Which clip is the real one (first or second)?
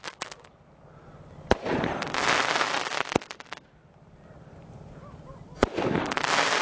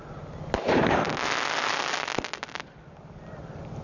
second